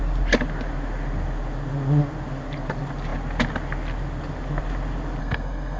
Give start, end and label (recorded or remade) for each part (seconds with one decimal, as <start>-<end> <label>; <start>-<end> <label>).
0.0-5.2 recorded; 5.2-5.8 remade